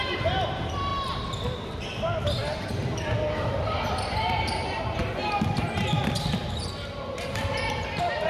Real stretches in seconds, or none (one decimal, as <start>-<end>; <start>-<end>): 0.9-2.7